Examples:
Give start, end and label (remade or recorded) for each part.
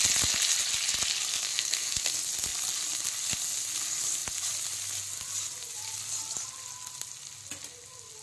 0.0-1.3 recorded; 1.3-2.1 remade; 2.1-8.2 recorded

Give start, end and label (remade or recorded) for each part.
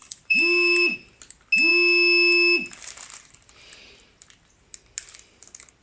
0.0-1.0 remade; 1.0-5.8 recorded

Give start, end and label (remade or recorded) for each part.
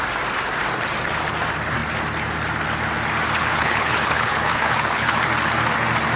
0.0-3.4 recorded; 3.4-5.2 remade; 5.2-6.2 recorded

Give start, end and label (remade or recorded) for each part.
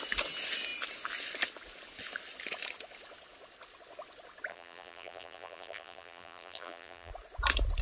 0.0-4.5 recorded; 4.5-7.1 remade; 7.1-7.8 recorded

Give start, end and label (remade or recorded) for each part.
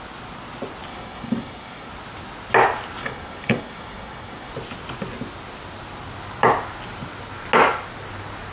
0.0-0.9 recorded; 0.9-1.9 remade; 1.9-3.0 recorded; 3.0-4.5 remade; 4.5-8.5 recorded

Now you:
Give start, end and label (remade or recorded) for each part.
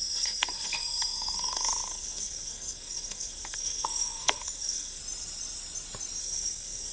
0.0-5.0 remade; 5.0-6.2 recorded; 6.2-6.9 remade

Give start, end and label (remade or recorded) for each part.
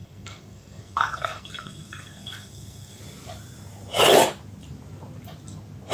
0.0-3.0 remade; 3.0-5.9 recorded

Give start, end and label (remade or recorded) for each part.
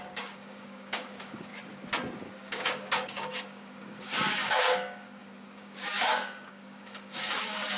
0.0-1.5 remade; 1.5-2.2 recorded; 2.2-7.8 remade